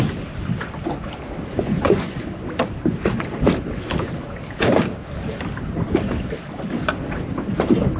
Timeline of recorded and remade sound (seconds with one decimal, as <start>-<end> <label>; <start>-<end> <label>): 0.0-1.5 recorded; 1.5-2.3 remade; 2.3-8.0 recorded